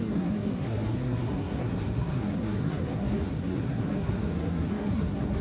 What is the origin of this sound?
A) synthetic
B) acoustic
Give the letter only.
A